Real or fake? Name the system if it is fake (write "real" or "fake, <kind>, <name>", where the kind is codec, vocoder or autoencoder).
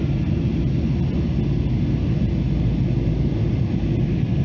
real